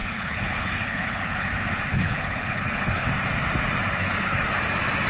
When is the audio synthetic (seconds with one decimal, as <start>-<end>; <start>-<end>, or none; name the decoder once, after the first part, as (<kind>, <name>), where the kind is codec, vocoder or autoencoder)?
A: 0.0-1.5 (codec, HILCodec); 1.9-3.1; 4.0-4.6